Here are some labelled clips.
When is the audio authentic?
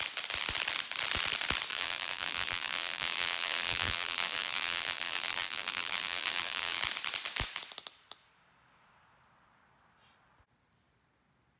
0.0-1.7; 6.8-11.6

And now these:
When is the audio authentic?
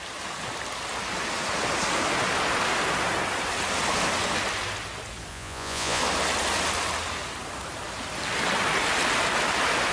0.0-5.3; 6.0-9.9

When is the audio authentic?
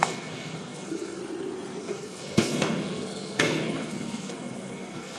1.2-1.8